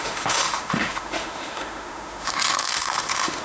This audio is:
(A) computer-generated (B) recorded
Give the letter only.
A